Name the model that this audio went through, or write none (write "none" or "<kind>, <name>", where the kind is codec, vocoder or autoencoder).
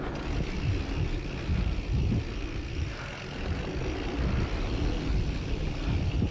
none